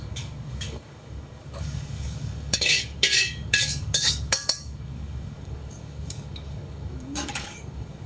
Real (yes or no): no